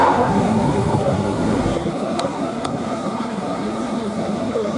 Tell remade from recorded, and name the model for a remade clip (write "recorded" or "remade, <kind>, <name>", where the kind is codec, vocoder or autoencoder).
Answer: remade, codec, SNAC